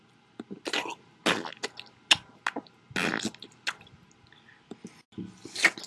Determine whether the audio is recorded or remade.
recorded